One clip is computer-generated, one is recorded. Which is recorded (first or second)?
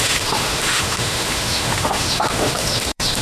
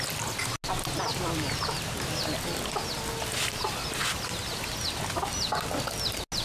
second